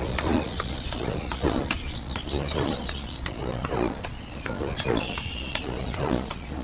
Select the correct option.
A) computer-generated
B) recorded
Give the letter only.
A